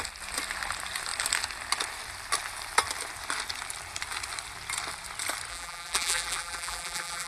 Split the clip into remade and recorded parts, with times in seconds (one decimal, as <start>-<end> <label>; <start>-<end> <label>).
0.0-5.5 recorded; 5.5-7.3 remade